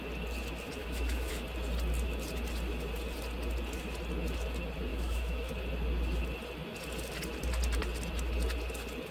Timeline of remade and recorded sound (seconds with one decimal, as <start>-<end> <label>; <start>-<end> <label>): 0.0-0.8 recorded; 0.8-1.3 remade; 1.3-4.9 recorded; 4.9-5.5 remade; 5.5-9.1 recorded